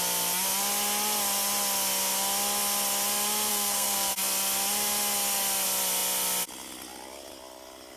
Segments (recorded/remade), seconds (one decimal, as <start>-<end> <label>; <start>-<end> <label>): 0.0-3.5 recorded; 3.5-4.1 remade; 4.1-8.0 recorded